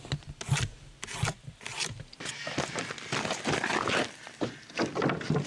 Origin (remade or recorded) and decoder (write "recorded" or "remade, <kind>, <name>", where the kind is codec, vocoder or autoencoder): recorded